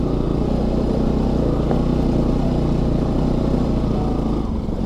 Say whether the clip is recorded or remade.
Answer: recorded